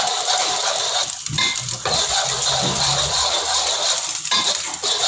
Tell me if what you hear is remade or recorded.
remade